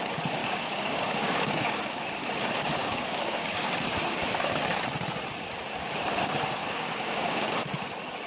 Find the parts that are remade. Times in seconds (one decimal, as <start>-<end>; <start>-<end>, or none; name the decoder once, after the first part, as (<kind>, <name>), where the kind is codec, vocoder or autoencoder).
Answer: 0.4-2.0 (codec, DAC); 2.8-3.7; 6.6-7.5